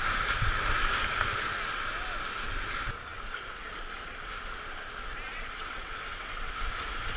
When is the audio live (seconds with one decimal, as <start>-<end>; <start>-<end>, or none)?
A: 0.0-5.3; 6.6-7.2